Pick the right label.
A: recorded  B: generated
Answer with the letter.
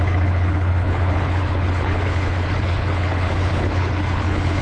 B